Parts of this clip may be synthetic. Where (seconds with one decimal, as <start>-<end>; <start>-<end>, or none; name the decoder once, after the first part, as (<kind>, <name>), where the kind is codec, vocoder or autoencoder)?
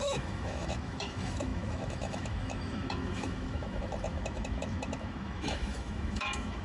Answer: 0.0-6.6 (autoencoder, DAC-VAE)